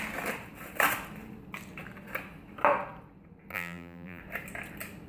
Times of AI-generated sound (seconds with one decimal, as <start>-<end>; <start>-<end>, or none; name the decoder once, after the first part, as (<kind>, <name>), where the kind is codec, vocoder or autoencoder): 3.5-4.2 (vocoder, BigVGAN v2)